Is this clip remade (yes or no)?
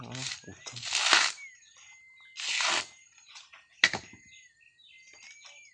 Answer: no